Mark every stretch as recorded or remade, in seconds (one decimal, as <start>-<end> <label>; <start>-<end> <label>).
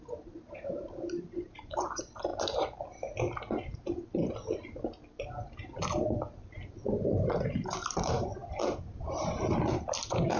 0.0-2.3 remade; 2.3-5.8 recorded; 5.8-8.4 remade; 8.4-9.7 recorded; 9.7-10.4 remade